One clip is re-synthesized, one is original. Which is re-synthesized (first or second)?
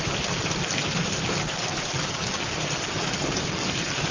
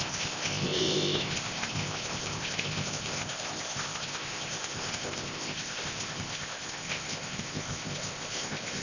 second